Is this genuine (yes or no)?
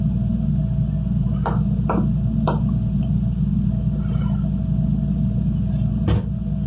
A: yes